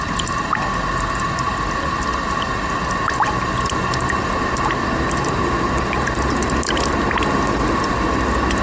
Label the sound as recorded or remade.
recorded